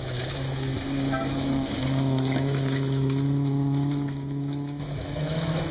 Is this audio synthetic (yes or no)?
yes